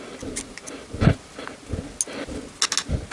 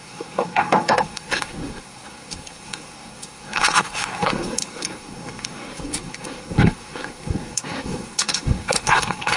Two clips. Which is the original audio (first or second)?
first